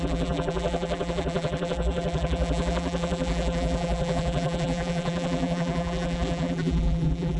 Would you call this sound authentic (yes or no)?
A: no